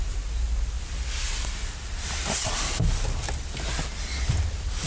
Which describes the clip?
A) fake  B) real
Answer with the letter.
B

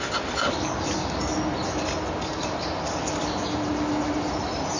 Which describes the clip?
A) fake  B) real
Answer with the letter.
B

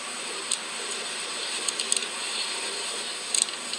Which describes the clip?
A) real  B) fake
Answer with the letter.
A